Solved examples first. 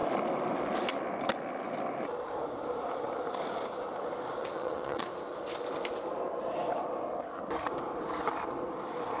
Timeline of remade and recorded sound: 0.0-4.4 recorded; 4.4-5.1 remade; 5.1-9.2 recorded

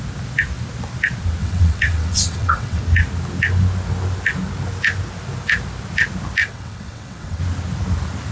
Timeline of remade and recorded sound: 0.0-1.4 recorded; 1.4-2.8 remade; 2.8-6.4 recorded; 6.4-7.4 remade; 7.4-8.3 recorded

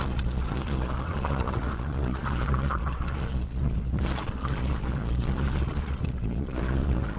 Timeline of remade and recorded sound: 0.0-7.2 remade